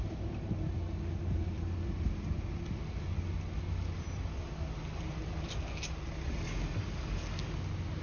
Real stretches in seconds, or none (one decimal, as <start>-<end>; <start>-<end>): 0.0-8.0